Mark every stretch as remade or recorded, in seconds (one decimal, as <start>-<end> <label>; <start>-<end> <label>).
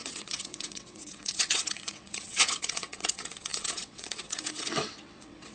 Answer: 0.0-5.5 remade